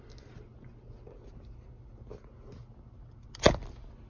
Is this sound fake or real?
real